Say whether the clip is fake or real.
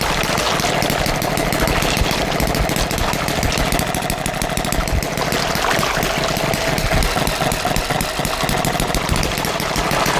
real